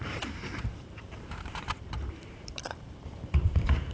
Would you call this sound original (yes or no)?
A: no